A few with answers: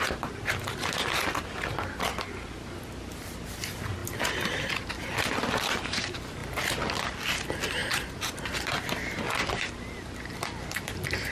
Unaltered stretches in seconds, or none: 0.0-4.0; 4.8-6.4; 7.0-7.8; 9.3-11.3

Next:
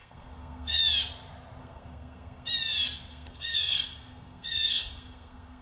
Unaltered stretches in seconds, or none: 0.8-1.6; 2.5-3.1

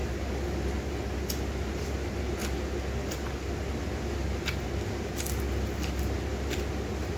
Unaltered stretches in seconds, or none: 0.0-7.2

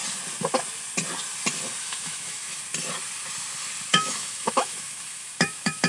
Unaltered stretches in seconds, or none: 0.0-1.8; 2.6-3.9

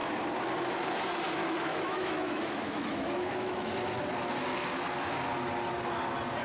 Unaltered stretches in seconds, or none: 0.0-1.4; 3.7-6.4

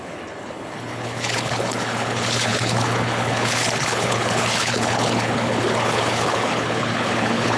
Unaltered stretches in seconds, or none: none

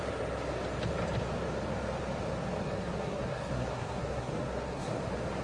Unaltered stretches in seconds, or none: 0.0-2.6; 5.0-5.4